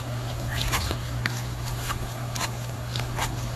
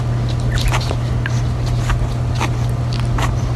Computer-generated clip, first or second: first